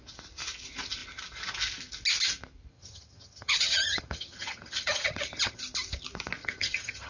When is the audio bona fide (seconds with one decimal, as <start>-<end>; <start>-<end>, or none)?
0.0-2.7; 5.6-6.4